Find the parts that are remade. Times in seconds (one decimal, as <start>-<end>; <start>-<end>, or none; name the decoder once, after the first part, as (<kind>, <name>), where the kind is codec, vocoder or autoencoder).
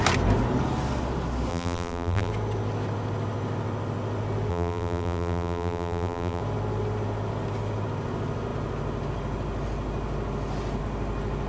1.5-2.3 (vocoder, BigVGAN v2); 4.5-6.4